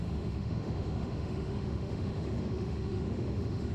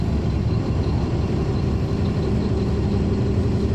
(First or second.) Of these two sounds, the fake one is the first